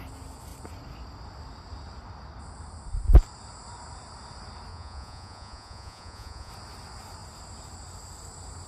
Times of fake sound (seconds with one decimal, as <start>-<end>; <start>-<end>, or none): 4.7-6.5